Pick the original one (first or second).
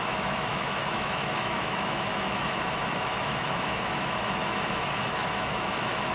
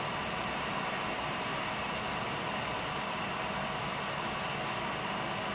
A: second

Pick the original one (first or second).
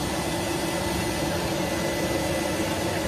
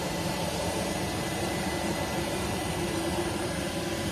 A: first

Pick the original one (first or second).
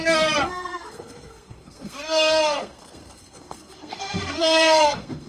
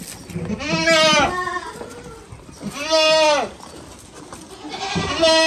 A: second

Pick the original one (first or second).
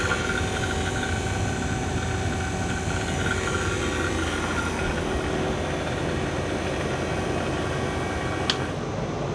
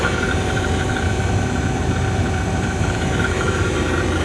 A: first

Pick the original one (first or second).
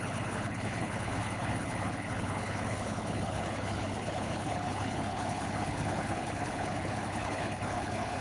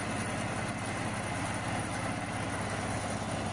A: second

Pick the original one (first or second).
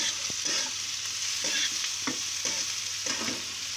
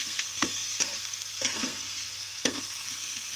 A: first